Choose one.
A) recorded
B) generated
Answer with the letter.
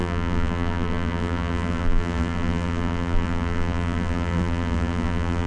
B